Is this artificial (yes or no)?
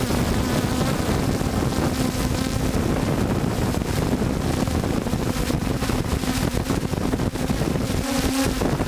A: no